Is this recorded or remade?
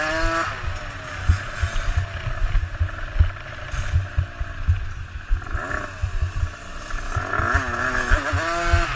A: recorded